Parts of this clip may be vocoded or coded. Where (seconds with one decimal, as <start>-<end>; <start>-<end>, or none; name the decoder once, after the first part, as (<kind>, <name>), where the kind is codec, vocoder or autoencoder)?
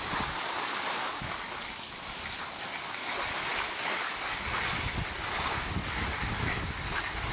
none